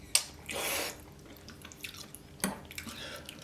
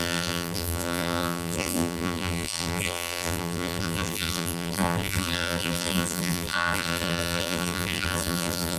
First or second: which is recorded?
first